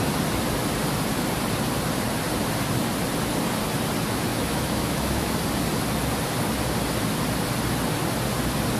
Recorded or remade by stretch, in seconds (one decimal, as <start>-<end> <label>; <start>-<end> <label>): 0.0-4.3 recorded; 4.3-5.3 remade; 5.3-8.8 recorded